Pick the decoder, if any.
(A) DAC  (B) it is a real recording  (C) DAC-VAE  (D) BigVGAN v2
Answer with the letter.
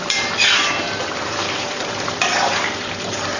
D